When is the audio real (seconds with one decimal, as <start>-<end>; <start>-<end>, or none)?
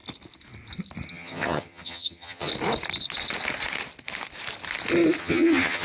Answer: 0.0-1.1; 2.5-5.2